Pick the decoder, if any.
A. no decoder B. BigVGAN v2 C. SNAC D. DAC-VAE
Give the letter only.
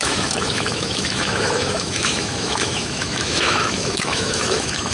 D